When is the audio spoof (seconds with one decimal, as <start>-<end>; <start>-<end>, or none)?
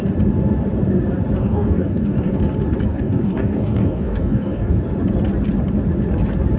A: 1.4-2.4; 2.9-4.8